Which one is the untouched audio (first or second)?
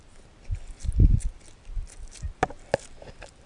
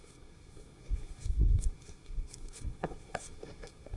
first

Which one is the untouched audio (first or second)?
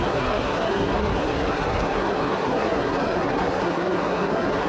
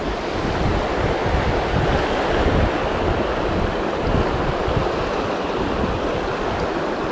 second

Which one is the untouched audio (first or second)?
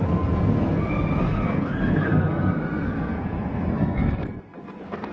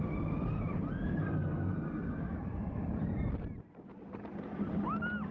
second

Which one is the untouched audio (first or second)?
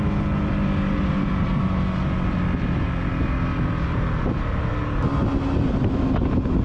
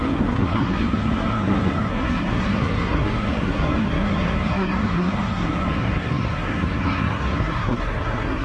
first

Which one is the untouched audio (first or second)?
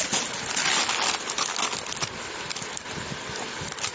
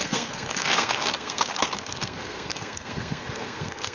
first